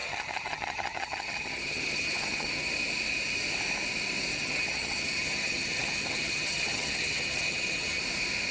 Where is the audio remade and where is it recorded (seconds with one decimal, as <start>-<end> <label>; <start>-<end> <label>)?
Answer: 0.0-2.7 remade; 2.7-4.3 recorded; 4.3-8.0 remade; 8.0-8.5 recorded